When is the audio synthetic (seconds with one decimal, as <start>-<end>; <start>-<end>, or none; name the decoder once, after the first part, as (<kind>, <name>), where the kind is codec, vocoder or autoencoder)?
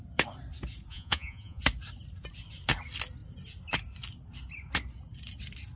0.9-1.6 (vocoder, Vocos)